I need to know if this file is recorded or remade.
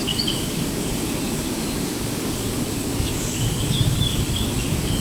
remade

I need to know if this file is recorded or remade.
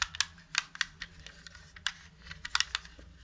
recorded